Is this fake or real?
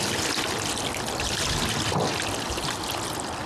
real